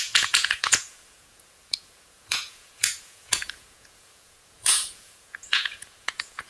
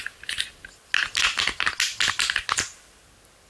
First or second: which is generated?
first